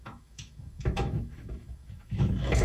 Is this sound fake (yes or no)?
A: yes